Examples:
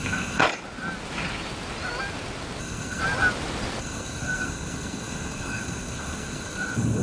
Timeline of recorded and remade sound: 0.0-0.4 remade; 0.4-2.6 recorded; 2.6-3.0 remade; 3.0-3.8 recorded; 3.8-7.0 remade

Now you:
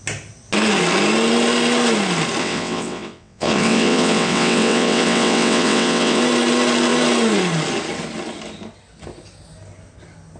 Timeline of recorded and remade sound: 0.0-2.4 recorded; 2.4-6.2 remade; 6.2-10.4 recorded

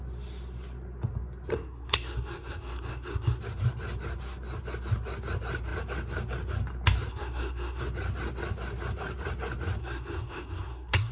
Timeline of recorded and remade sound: 0.0-1.5 recorded; 1.5-3.4 remade; 3.4-7.1 recorded; 7.1-7.8 remade; 7.8-9.8 recorded; 9.8-11.1 remade

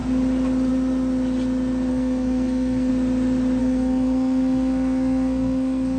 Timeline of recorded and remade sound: 0.0-1.9 recorded; 1.9-2.9 remade; 2.9-3.6 recorded; 3.6-6.0 remade